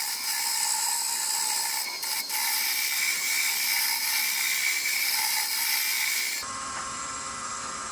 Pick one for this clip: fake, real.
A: fake